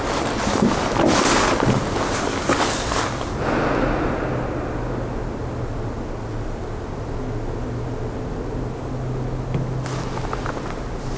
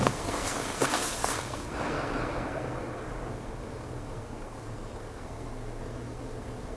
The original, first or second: first